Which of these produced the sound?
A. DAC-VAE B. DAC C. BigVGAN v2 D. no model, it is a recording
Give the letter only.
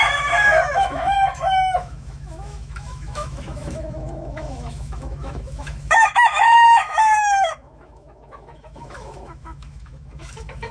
A